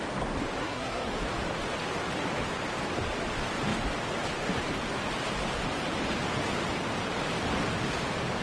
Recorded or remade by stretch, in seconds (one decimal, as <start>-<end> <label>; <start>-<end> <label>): 0.0-0.6 recorded; 0.6-1.1 remade; 1.1-8.4 recorded